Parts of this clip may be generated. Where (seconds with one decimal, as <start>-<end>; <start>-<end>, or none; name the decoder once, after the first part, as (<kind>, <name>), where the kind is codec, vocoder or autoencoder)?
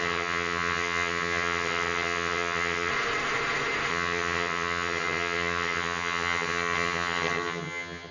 0.0-2.9 (vocoder, HiFi-GAN); 3.9-8.1